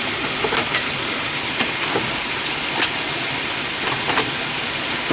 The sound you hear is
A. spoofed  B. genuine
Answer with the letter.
B